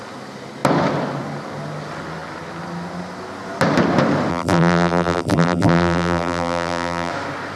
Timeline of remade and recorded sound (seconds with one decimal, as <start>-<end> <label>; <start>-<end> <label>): 0.0-4.3 recorded; 4.3-7.1 remade; 7.1-7.6 recorded